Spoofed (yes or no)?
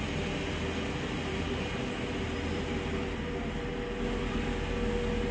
no